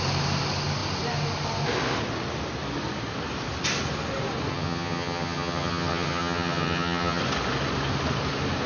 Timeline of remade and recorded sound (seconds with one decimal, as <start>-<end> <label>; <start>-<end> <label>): 0.0-4.5 recorded; 4.5-7.2 remade; 7.2-8.7 recorded